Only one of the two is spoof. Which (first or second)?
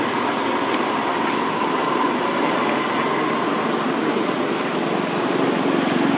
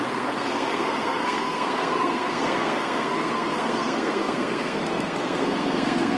second